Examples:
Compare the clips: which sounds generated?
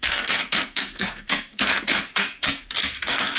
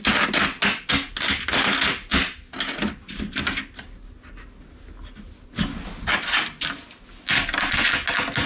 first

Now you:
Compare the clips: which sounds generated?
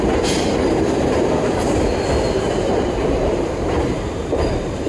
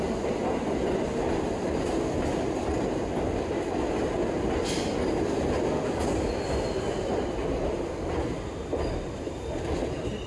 first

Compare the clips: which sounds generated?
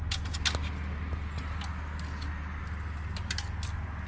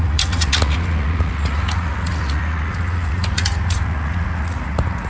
second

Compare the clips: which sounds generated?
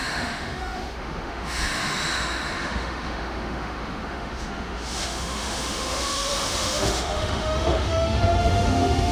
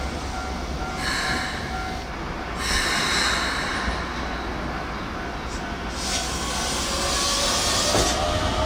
first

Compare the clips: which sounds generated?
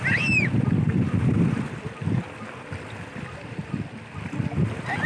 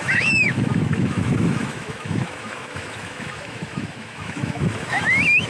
second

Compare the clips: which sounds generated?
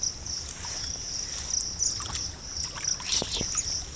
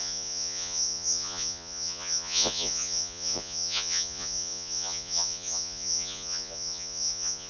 second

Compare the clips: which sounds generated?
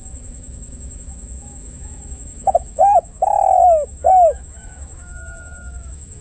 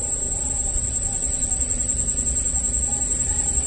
first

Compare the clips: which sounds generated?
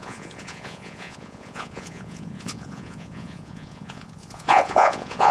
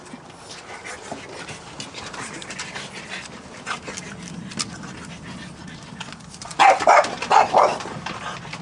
first